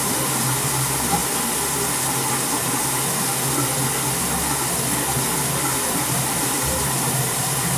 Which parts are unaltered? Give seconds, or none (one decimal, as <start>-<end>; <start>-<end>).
1.2-5.9